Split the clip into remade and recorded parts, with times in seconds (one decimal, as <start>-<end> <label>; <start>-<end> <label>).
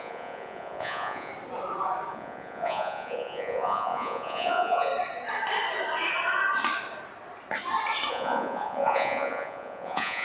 0.0-1.3 remade; 1.3-2.1 recorded; 2.1-4.9 remade; 4.9-8.1 recorded; 8.1-10.2 remade